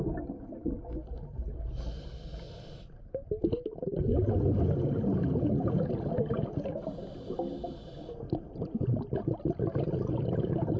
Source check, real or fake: real